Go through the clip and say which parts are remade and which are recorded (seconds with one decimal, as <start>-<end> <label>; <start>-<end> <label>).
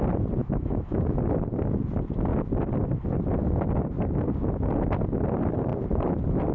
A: 0.0-0.4 recorded; 0.4-1.2 remade; 1.2-6.5 recorded